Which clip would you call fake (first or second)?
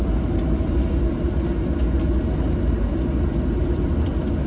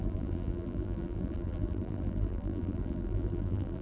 second